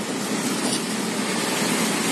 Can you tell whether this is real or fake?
real